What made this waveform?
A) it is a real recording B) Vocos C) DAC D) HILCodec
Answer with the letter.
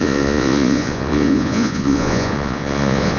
B